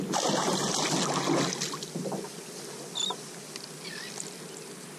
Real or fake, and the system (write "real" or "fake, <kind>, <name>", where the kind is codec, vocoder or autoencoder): real